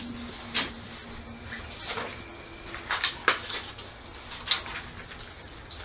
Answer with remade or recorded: recorded